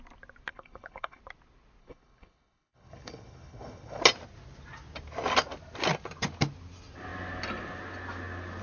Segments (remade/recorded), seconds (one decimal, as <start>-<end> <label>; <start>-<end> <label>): 0.0-0.5 recorded; 0.5-1.2 remade; 1.2-1.8 recorded; 1.8-4.0 remade; 4.0-8.6 recorded